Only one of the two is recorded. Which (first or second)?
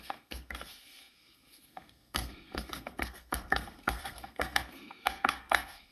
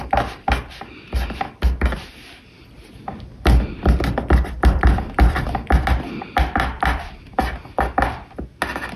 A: second